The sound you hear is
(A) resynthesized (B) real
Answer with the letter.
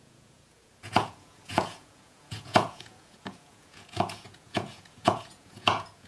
A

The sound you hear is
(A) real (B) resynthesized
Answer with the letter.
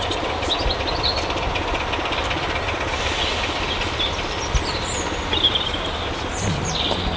A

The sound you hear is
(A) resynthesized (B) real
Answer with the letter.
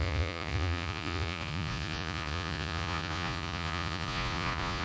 A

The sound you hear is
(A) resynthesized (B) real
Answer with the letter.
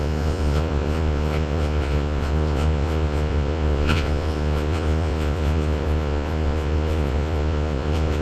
A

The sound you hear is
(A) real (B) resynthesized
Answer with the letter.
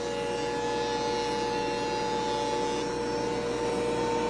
A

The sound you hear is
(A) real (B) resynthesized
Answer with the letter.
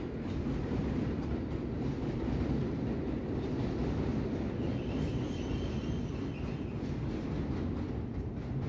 A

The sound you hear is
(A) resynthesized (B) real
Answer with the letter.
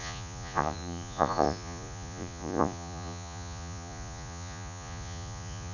A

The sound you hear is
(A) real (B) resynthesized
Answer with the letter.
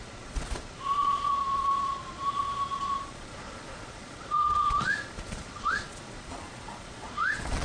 B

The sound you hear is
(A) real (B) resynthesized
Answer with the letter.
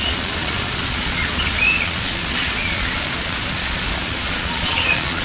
B